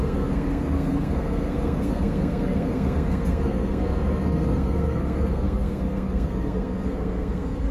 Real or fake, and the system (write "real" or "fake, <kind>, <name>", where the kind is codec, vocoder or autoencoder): fake, codec, SNAC